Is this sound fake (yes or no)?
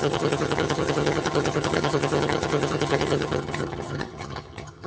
yes